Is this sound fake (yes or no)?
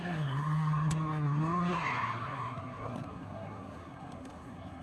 yes